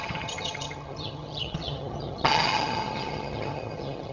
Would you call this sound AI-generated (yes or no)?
yes